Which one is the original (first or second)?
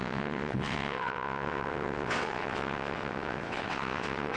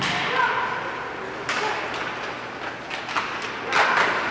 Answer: second